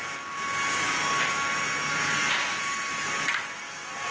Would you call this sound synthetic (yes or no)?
no